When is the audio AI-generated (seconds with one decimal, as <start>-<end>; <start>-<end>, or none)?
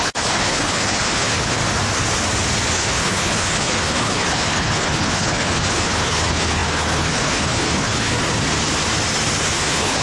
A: 0.0-1.6; 2.7-8.1; 9.5-10.0